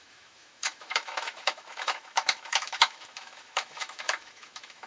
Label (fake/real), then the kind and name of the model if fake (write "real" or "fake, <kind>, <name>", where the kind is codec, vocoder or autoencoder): fake, autoencoder, DAC-VAE